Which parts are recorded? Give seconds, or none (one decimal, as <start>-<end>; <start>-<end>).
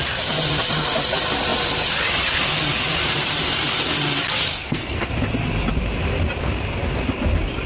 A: 0.0-4.5; 5.1-7.7